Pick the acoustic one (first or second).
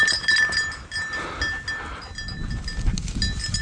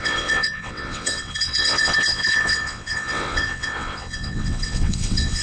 first